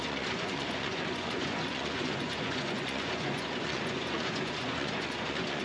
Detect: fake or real fake